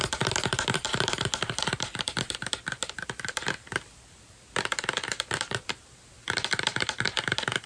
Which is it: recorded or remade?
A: remade